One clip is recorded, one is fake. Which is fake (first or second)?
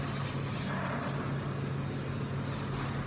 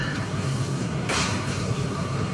second